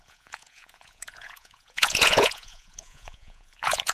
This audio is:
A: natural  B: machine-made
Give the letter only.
B